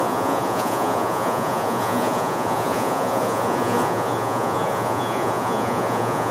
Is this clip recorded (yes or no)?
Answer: no